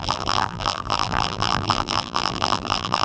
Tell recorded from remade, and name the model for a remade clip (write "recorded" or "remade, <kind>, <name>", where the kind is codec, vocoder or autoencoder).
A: remade, vocoder, BigVGAN v2